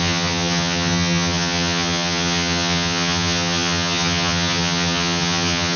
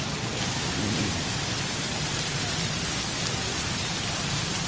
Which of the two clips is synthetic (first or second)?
first